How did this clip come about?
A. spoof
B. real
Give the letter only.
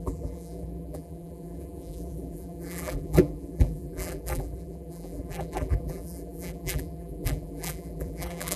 A